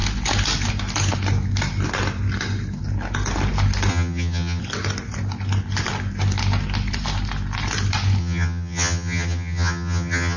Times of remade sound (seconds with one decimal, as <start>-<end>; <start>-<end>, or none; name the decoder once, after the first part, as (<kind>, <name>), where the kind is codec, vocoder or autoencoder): 3.9-4.6 (vocoder, HiFi-GAN); 8.2-10.4